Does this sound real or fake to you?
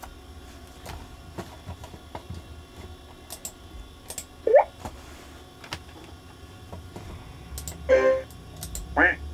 real